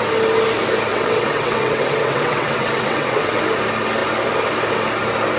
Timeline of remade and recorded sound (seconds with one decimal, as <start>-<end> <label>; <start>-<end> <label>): 0.0-0.9 recorded; 0.9-3.4 remade; 3.4-5.4 recorded